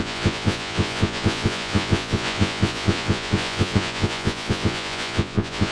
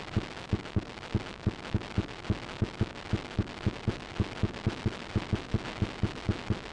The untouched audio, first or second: second